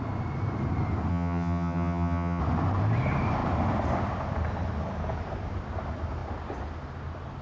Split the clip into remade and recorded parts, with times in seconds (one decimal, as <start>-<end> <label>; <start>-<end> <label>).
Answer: 0.0-1.1 recorded; 1.1-2.4 remade; 2.4-7.4 recorded

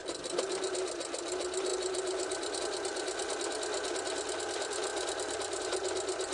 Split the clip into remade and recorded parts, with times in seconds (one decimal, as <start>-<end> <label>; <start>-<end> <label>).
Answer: 0.0-0.7 remade; 0.7-1.7 recorded; 1.7-2.6 remade; 2.6-4.9 recorded; 4.9-5.6 remade; 5.6-6.3 recorded

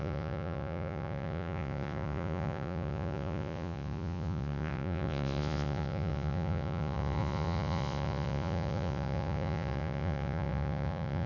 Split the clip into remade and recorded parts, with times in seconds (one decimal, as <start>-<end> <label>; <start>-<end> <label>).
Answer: 0.0-11.3 remade